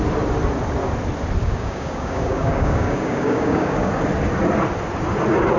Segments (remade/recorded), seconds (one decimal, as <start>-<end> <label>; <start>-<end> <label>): 0.0-1.4 recorded; 1.4-3.9 remade; 3.9-5.6 recorded